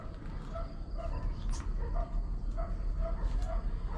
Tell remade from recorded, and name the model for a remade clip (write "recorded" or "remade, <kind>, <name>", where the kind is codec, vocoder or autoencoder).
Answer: recorded